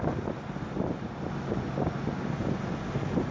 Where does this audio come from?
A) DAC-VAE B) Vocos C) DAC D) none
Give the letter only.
D